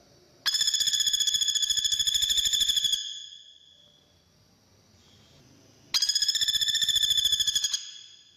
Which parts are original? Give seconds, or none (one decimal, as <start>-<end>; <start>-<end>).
0.0-8.4